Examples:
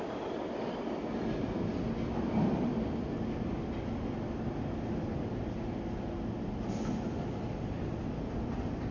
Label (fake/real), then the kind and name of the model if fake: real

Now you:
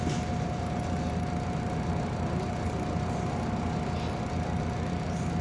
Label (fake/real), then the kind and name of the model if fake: real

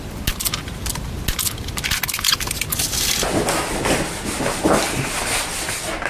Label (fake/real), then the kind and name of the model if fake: real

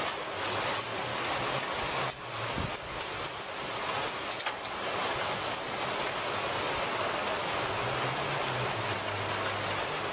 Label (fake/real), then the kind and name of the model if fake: real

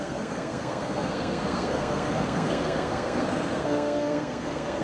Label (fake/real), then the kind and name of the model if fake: fake, codec, SNAC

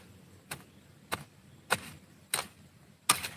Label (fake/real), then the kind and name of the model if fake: real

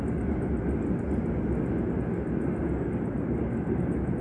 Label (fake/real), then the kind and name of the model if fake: real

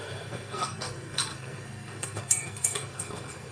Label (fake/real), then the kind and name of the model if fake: fake, codec, SNAC